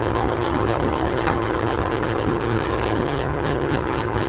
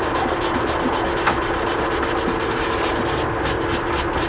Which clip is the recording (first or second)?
second